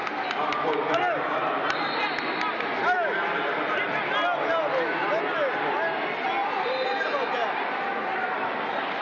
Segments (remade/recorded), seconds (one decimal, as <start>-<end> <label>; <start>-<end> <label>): 0.0-8.1 recorded; 8.1-9.0 remade